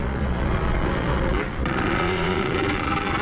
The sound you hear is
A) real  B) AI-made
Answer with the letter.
B